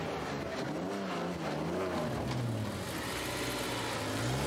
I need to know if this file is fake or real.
real